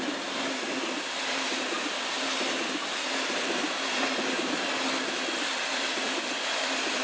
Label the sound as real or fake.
real